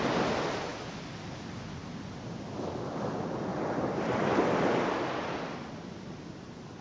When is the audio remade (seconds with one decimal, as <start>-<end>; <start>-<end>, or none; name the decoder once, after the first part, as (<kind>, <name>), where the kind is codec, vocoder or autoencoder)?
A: none